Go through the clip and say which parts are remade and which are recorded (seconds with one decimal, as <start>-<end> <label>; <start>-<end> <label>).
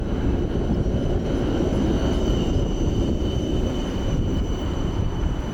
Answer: 0.0-2.0 recorded; 2.0-5.5 remade